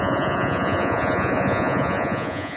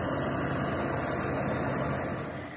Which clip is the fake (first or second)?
first